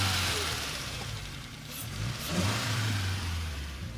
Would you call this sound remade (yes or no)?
yes